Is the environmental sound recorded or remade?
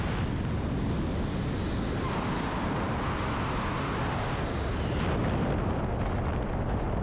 recorded